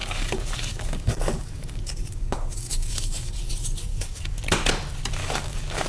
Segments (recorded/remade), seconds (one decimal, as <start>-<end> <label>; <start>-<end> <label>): 0.0-3.5 remade; 3.5-3.9 recorded; 3.9-4.4 remade; 4.4-5.2 recorded; 5.2-5.9 remade